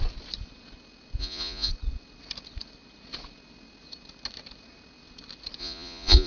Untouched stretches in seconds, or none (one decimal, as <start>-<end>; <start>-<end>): 0.0-1.2; 1.7-5.6